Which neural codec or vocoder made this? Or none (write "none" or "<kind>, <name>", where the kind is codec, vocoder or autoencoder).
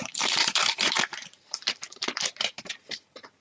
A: vocoder, BigVGAN v2